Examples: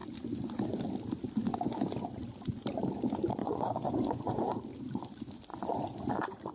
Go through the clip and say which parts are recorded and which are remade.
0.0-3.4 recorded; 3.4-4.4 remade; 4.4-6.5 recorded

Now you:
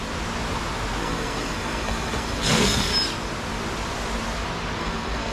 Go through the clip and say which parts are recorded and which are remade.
0.0-1.0 recorded; 1.0-2.9 remade; 2.9-4.8 recorded; 4.8-5.3 remade

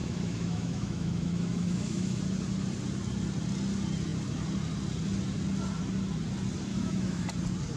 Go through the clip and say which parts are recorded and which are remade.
0.0-2.2 remade; 2.2-6.7 recorded; 6.7-7.3 remade; 7.3-7.8 recorded

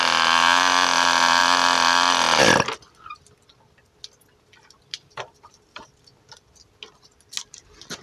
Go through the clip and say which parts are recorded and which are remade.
0.0-8.0 recorded